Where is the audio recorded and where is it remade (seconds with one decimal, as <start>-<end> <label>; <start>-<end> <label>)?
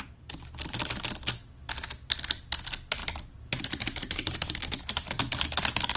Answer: 0.0-3.0 recorded; 3.0-5.6 remade; 5.6-6.0 recorded